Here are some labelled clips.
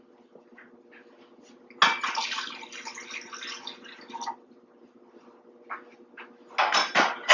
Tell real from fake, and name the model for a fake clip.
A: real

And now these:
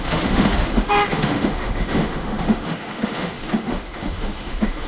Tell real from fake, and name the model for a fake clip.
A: fake, autoencoder, DAC-VAE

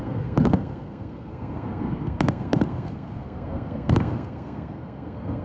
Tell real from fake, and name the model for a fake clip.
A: fake, codec, SNAC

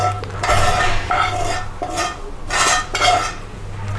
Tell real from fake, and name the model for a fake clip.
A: real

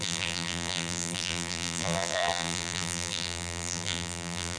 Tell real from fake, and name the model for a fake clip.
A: fake, vocoder, BigVGAN v2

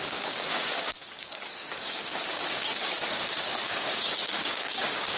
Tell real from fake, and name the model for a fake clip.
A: fake, codec, DAC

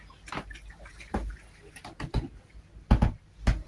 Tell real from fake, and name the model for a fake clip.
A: real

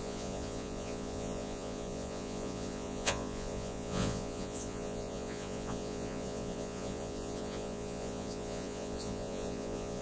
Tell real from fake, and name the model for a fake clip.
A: fake, vocoder, Vocos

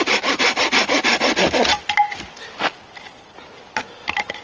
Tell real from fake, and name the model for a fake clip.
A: real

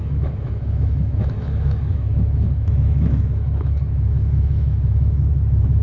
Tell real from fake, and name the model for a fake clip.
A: fake, autoencoder, DAC-VAE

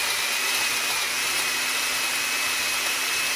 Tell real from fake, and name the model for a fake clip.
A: real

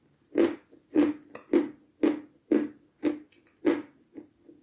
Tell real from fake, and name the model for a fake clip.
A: real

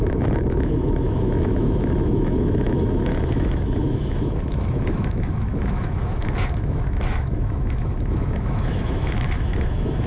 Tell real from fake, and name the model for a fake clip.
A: fake, autoencoder, DAC-VAE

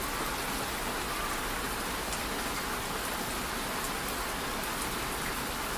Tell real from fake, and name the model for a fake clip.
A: real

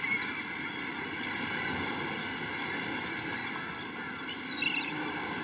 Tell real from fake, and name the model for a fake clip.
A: real